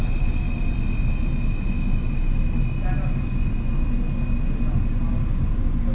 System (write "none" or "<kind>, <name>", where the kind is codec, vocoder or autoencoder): none